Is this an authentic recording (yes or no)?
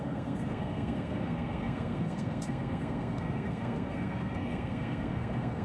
no